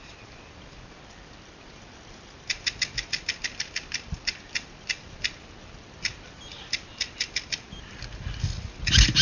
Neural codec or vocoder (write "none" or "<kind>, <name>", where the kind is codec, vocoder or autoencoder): none